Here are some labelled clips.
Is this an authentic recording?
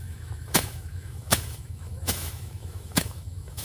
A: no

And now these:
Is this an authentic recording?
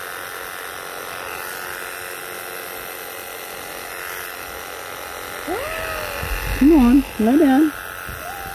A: yes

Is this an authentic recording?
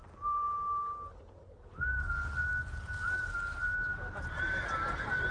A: yes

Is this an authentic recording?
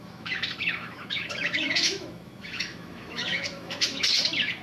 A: no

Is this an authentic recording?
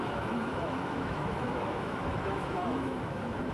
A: no